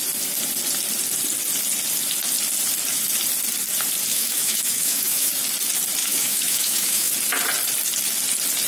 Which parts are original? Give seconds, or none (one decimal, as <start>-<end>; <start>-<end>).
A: 0.0-4.1; 5.3-6.0; 7.1-8.7